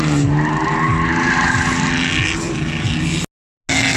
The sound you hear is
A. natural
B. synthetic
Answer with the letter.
A